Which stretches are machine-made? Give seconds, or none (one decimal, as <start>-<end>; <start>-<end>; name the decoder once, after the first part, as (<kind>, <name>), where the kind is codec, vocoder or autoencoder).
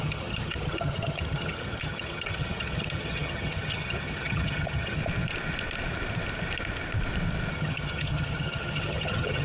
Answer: 0.0-5.0 (vocoder, HiFi-GAN); 7.5-9.4